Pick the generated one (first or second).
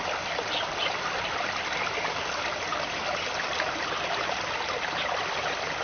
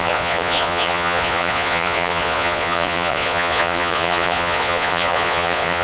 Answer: second